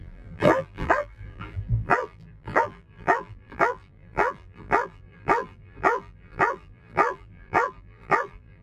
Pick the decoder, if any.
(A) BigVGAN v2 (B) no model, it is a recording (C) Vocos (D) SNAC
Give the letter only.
A